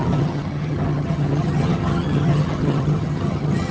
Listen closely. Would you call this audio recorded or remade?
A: remade